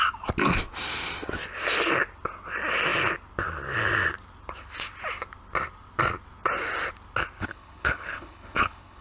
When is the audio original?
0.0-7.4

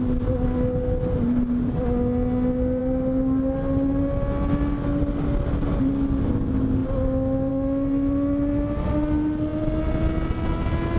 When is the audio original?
0.0-11.0

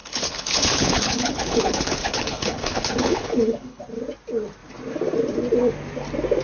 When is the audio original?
3.8-6.4

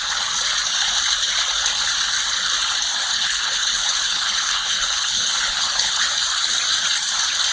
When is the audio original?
0.0-3.1; 6.1-7.5

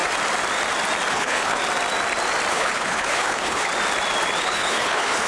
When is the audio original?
0.0-1.1; 1.6-2.5; 3.7-4.4